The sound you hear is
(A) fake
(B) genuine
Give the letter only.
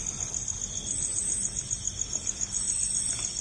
B